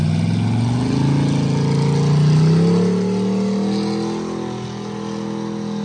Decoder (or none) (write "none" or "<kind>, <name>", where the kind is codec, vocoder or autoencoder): none